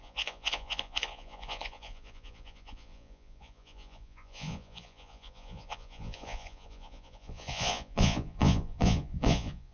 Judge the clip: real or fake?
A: fake